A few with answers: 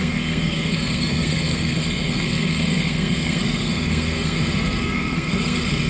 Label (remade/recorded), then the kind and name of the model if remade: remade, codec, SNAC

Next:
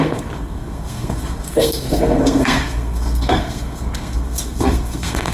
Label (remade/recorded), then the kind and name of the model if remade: remade, codec, SNAC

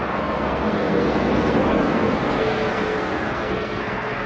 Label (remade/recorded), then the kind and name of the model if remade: remade, codec, SNAC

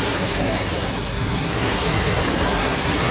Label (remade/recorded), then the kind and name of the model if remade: remade, codec, SNAC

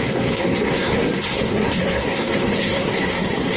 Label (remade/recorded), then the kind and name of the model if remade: remade, codec, SNAC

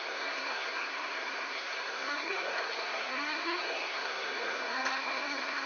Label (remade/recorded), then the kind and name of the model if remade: remade, codec, SNAC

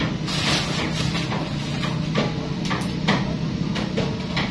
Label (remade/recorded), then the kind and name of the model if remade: recorded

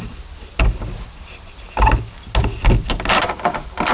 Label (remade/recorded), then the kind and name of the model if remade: recorded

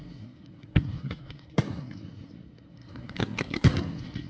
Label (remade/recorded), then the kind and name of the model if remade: remade, codec, SNAC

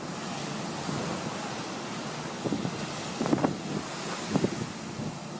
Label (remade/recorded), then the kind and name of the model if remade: recorded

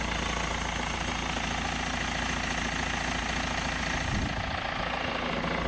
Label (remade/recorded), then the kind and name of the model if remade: recorded